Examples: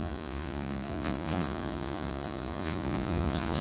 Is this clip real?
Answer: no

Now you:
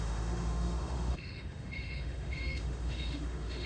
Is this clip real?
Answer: no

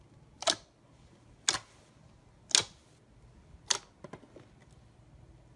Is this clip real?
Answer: yes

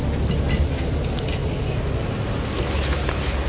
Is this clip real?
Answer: yes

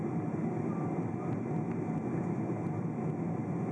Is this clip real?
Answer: yes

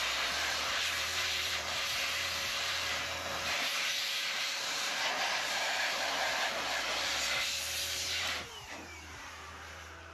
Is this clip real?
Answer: no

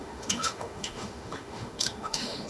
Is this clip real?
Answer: no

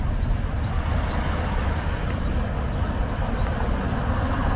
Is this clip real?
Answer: yes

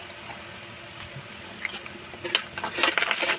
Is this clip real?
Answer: yes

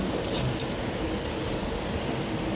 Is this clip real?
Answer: yes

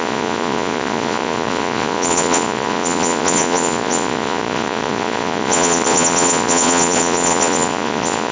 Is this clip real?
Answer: no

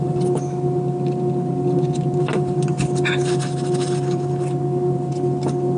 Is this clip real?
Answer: yes